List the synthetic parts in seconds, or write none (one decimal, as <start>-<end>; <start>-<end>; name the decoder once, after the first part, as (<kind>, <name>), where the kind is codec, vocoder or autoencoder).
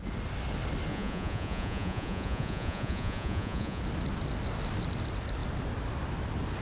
0.9-3.8 (vocoder, Vocos)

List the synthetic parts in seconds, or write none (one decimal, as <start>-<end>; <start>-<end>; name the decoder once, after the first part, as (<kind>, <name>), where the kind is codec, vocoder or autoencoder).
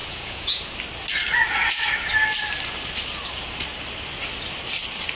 0.0-0.6 (vocoder, Vocos)